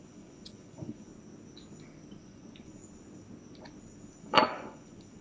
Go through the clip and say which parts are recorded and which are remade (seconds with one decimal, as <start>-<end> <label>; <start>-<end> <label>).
0.0-1.1 remade; 1.1-2.2 recorded; 2.2-2.8 remade; 2.8-4.2 recorded; 4.2-5.2 remade